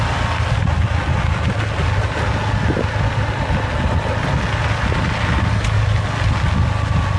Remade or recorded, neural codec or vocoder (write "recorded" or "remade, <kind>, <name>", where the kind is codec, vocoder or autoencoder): recorded